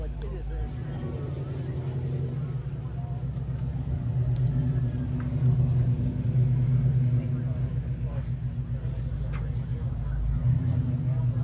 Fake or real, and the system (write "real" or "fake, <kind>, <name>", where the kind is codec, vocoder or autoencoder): real